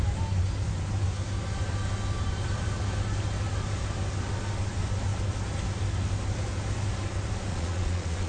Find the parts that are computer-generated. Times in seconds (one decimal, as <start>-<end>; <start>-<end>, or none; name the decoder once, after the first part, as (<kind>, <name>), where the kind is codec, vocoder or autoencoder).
7.5-8.3 (vocoder, Vocos)